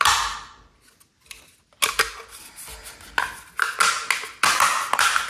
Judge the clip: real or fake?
real